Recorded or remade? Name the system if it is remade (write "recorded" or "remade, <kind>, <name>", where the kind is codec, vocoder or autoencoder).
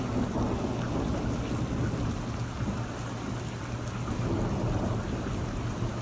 recorded